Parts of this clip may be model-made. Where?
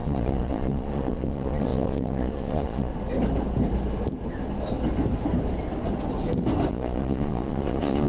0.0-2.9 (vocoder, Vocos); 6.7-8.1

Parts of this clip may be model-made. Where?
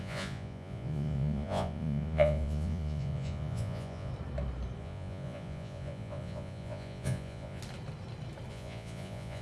0.0-4.1 (vocoder, Vocos); 4.8-7.6; 8.5-9.4